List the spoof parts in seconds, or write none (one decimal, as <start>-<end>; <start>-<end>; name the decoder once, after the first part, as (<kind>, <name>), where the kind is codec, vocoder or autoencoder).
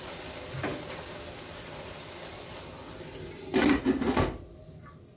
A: none